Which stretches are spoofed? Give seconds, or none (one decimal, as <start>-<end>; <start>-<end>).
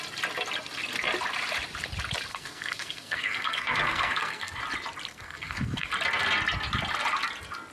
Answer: 2.3-4.6; 5.1-5.9